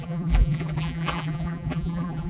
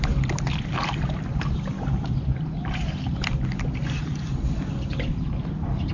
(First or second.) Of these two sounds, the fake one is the first